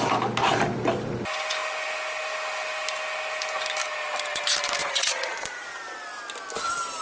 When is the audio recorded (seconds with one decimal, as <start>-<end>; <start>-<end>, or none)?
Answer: 0.0-4.8; 5.7-7.0